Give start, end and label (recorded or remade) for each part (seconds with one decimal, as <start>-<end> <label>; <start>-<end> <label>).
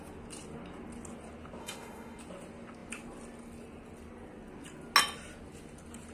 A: 0.0-1.6 recorded; 1.6-2.2 remade; 2.2-6.1 recorded